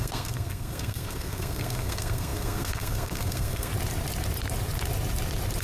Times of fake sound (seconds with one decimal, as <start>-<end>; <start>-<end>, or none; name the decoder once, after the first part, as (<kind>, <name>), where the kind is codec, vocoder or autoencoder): 0.0-3.7 (codec, SNAC)